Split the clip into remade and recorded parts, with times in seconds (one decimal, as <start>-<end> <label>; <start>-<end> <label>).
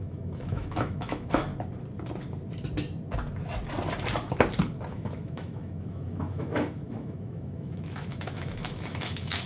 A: 0.0-1.5 remade; 1.5-4.9 recorded; 4.9-9.5 remade